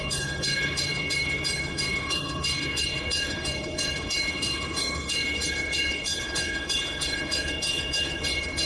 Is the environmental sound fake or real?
fake